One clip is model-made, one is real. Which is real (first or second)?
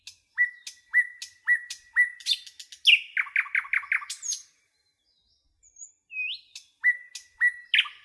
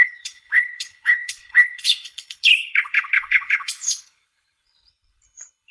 first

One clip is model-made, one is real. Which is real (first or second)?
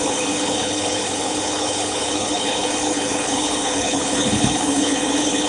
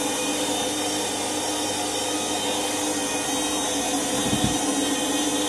second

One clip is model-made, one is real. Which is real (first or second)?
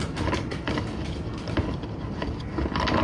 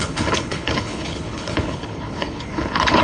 first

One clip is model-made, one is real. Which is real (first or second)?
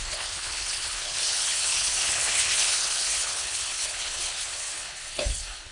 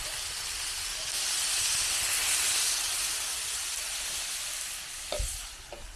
second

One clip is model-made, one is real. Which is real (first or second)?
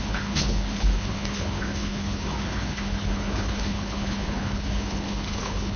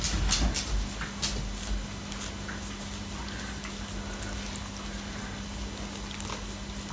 second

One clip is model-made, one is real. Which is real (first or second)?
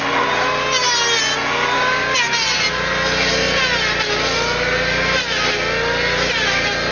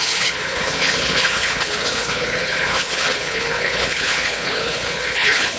first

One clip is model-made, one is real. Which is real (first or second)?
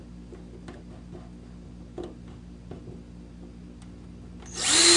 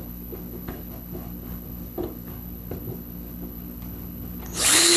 first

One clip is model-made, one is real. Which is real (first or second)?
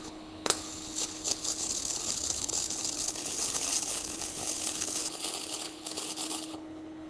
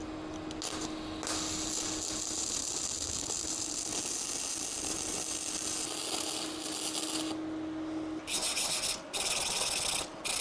second